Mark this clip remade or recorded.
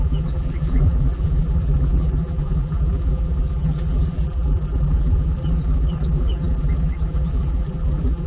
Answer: remade